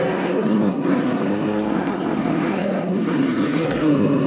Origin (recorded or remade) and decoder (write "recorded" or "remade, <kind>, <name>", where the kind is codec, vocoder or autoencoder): remade, codec, SNAC